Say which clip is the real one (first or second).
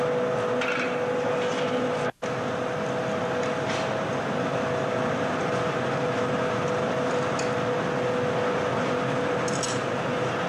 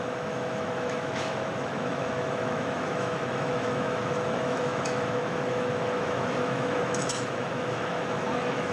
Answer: first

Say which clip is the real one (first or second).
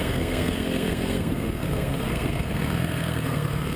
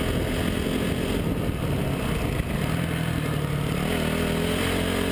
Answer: second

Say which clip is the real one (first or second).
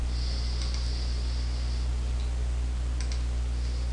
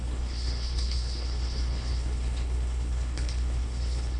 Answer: first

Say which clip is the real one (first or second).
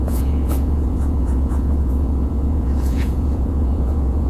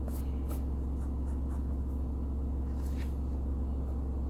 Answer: second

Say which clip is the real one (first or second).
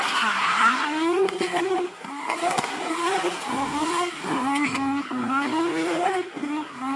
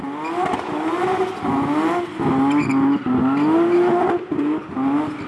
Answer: second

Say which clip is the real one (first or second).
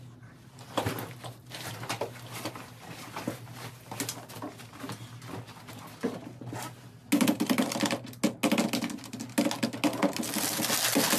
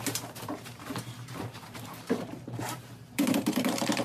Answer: first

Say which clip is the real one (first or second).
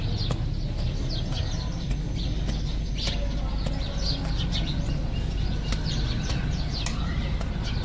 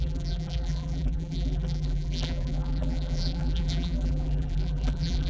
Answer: first